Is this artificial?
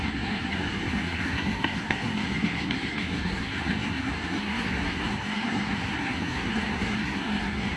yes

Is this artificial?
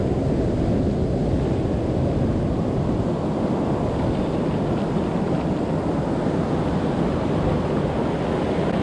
no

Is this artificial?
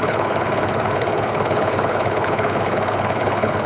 yes